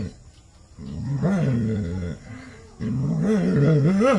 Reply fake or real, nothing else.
real